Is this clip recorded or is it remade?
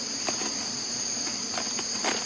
recorded